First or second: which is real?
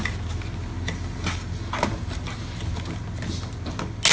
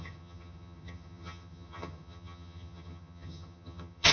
first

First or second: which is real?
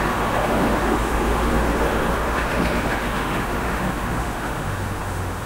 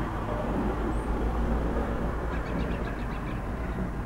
second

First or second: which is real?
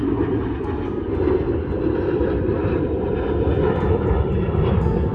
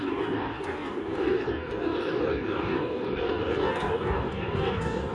first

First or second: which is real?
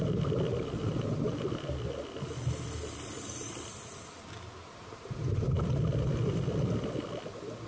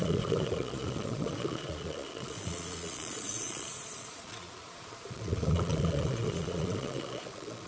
first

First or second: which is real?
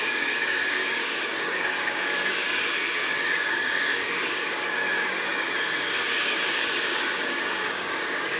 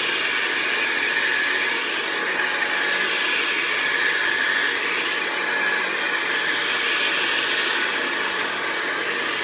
second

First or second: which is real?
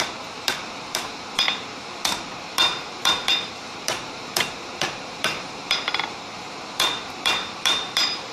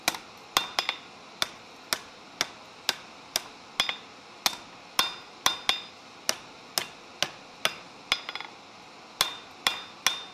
second